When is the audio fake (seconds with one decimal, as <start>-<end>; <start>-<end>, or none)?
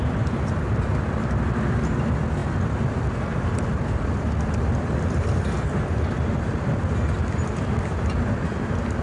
2.4-5.5